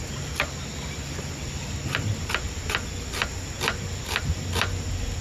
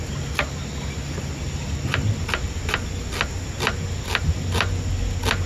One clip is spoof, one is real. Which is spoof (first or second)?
first